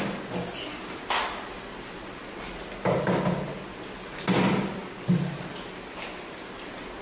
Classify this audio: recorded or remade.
recorded